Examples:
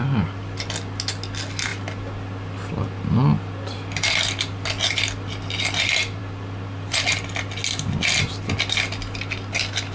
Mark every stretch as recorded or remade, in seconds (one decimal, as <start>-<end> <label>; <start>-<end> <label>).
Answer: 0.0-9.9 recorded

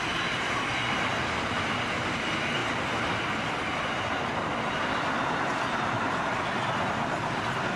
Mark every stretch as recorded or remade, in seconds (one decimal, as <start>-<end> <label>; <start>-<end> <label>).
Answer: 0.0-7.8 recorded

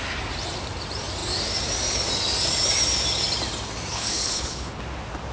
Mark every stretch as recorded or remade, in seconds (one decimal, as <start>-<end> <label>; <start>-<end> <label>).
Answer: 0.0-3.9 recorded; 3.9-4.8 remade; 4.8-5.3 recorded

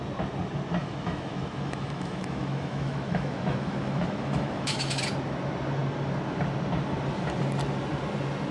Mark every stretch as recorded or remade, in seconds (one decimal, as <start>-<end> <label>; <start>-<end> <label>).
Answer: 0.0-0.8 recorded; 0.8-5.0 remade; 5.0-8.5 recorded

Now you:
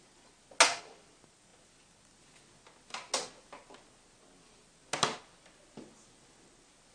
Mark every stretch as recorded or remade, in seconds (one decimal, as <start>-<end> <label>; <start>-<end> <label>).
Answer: 0.0-6.9 recorded

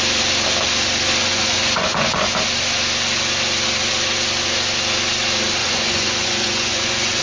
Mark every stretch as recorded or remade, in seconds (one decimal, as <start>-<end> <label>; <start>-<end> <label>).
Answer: 0.0-1.2 recorded; 1.2-2.3 remade; 2.3-5.6 recorded; 5.6-7.2 remade